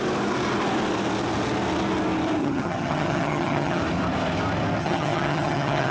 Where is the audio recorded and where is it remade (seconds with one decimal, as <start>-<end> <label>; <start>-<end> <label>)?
0.0-2.4 recorded; 2.4-3.8 remade; 3.8-4.8 recorded; 4.8-5.9 remade